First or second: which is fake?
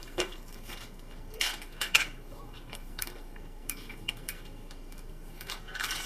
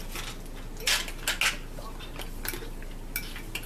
first